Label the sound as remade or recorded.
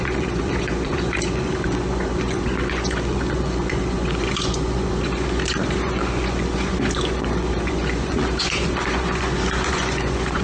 remade